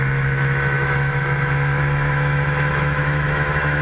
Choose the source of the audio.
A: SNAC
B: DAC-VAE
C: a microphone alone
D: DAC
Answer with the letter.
B